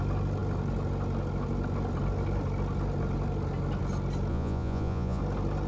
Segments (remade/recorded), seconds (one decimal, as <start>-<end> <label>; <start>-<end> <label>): 0.0-4.3 recorded; 4.3-5.2 remade; 5.2-5.7 recorded